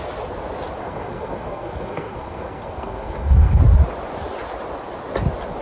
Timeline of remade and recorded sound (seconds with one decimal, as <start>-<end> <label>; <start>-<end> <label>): 0.0-0.8 recorded; 0.8-3.6 remade; 3.6-5.6 recorded